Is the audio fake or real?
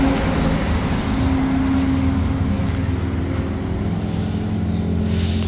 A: real